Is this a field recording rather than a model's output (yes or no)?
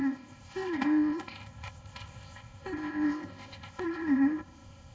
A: no